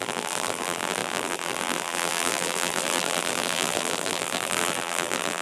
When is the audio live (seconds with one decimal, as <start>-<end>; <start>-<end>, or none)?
none